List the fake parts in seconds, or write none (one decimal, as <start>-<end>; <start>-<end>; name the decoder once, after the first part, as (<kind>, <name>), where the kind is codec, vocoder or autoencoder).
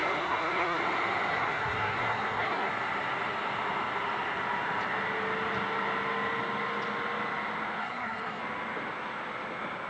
0.0-0.8 (codec, SNAC); 1.3-2.7; 7.8-8.4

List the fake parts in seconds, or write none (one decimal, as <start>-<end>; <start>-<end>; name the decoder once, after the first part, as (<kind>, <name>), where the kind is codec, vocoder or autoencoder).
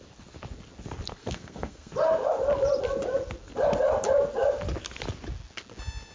1.2-1.9 (codec, SNAC)